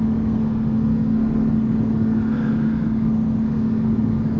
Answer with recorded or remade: remade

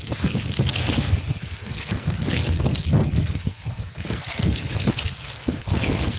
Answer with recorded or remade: remade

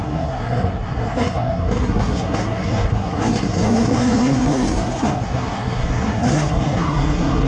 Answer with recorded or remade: remade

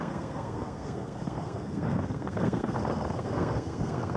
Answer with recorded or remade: remade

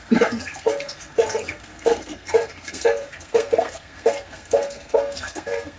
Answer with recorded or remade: remade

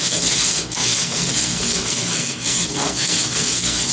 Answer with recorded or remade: remade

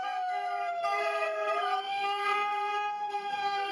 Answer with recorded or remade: remade